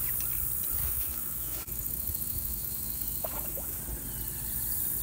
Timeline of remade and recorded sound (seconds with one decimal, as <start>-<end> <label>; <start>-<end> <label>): 0.0-0.8 recorded; 0.8-3.8 remade; 3.8-5.0 recorded